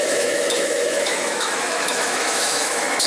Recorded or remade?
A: remade